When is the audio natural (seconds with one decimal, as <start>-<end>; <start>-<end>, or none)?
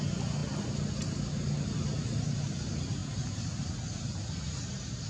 0.0-5.1